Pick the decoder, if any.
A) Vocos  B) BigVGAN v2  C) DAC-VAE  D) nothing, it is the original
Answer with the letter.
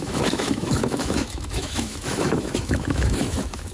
C